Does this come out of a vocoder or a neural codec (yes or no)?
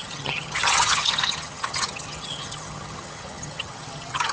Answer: yes